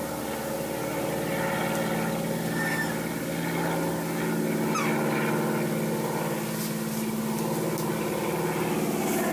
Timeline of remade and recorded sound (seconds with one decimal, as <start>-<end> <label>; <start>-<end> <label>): 0.0-9.3 recorded